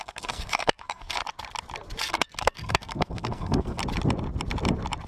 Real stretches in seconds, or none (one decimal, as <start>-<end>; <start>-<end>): 1.2-2.1; 3.8-5.1